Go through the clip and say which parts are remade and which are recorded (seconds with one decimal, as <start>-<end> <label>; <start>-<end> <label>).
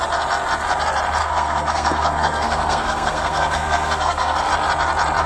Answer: 0.0-1.2 recorded; 1.2-4.4 remade; 4.4-5.3 recorded